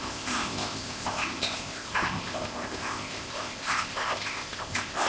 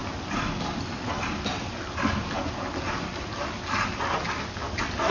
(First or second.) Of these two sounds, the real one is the second